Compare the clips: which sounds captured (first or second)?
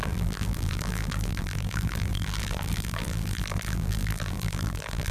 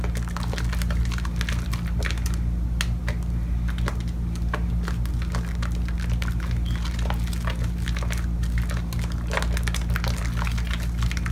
second